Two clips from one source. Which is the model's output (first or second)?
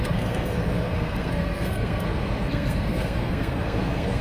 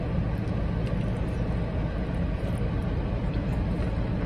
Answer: first